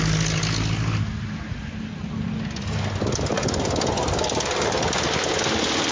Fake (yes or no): no